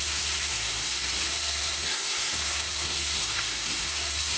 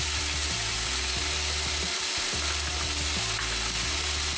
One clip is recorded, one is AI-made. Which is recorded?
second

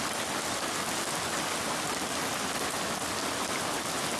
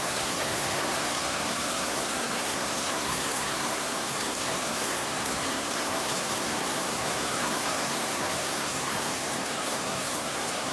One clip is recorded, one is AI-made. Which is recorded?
first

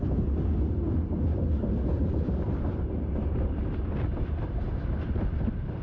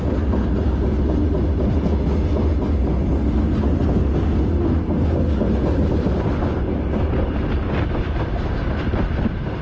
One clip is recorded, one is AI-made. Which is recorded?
second